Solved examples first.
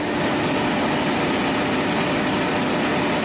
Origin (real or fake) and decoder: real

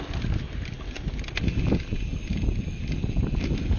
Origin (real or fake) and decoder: real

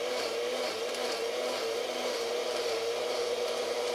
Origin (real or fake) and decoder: fake, vocoder, BigVGAN v2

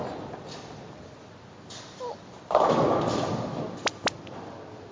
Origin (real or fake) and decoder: real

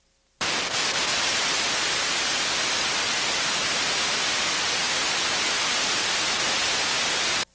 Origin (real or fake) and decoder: real